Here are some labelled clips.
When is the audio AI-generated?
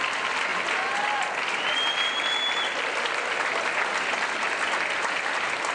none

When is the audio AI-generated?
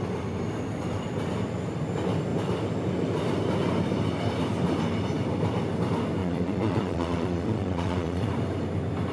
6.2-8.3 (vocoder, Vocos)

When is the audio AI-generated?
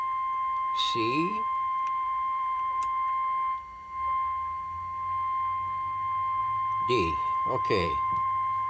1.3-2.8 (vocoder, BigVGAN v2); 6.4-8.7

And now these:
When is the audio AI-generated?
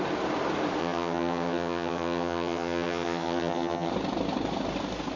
0.8-3.9 (vocoder, HiFi-GAN)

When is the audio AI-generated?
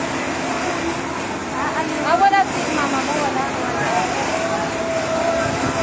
none